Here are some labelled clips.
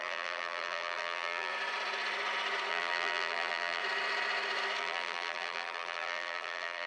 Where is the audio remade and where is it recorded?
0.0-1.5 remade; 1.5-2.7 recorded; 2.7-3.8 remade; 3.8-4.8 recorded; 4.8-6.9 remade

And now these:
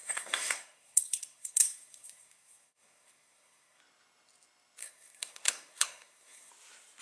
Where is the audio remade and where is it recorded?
0.0-3.8 remade; 3.8-4.8 recorded; 4.8-6.5 remade; 6.5-7.0 recorded